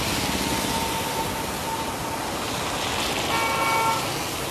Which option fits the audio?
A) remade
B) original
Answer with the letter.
B